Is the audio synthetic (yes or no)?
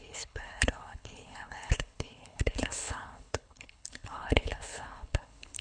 yes